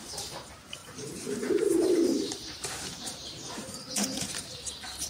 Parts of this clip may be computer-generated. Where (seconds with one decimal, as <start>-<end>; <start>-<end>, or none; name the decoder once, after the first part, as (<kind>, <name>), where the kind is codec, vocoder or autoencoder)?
0.0-5.1 (vocoder, BigVGAN v2)

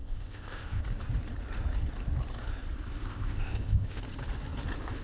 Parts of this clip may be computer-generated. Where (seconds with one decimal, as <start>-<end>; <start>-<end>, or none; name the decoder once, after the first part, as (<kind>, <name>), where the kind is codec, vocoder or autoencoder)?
0.0-0.8 (codec, ZipCodec); 3.0-4.0

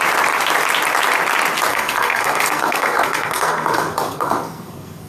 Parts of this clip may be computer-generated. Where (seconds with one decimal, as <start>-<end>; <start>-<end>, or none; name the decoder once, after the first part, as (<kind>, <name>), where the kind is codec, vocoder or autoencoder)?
1.7-5.1 (codec, SNAC)

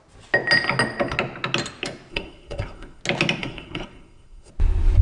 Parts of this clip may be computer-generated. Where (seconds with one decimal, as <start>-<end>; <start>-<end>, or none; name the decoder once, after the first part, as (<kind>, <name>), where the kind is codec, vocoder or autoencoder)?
2.1-3.0 (codec, SNAC); 3.4-4.5

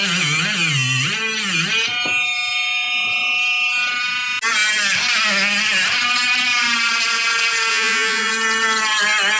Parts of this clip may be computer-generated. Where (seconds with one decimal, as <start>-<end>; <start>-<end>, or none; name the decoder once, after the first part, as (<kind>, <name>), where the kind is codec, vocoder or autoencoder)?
7.7-8.3 (vocoder, Vocos)

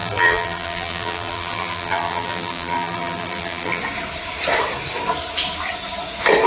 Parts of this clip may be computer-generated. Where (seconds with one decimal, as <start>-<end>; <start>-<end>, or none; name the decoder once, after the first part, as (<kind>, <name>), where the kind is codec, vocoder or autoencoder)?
0.0-3.8 (vocoder, BigVGAN v2)